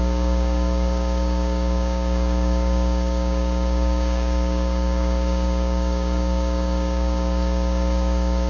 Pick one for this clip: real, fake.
fake